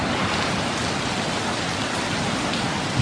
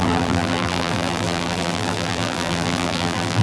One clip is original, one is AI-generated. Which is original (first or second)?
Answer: first